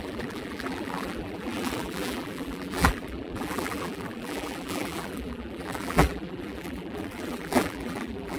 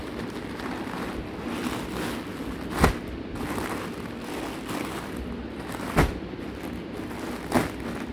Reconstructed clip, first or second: first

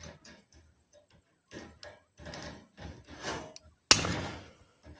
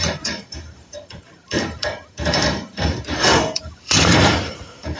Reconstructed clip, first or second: second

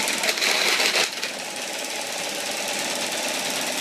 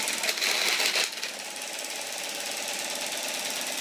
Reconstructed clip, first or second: first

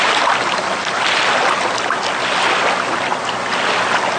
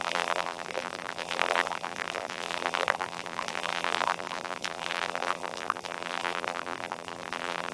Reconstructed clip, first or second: second